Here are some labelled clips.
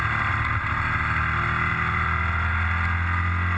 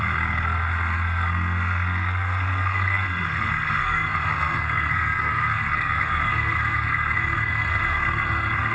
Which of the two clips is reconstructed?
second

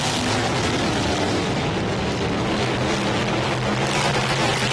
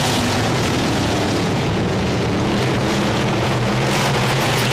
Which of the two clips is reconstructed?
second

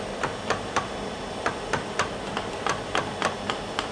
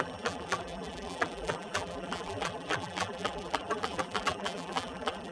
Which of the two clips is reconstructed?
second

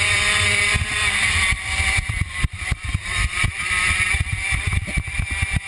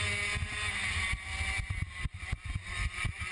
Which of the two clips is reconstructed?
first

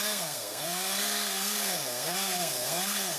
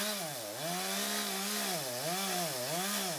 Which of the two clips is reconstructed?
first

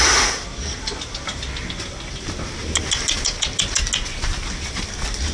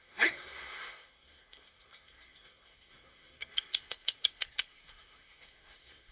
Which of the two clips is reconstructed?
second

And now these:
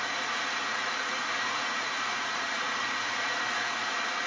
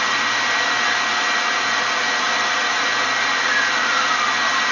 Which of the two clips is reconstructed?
first